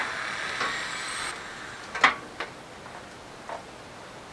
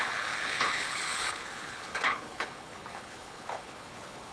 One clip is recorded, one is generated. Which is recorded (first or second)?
first